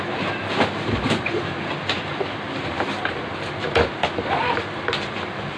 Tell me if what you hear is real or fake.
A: real